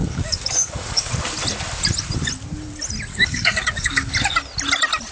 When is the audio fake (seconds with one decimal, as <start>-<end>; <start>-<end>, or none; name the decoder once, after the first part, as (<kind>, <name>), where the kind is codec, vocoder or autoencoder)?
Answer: 0.0-1.1 (codec, DAC); 3.1-4.1